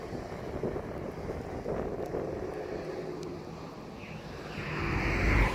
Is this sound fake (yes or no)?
no